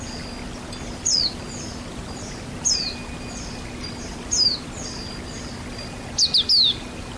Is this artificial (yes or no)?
no